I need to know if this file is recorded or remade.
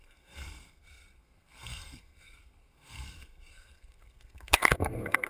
remade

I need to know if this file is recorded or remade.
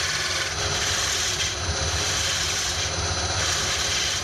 recorded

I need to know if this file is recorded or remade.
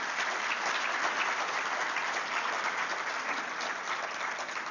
recorded